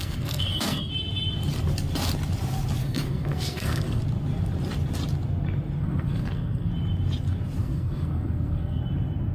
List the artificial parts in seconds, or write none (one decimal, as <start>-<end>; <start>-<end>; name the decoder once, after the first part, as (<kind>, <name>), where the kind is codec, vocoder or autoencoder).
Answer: 0.0-0.9 (codec, SNAC); 2.8-4.0; 5.8-6.7; 7.6-8.8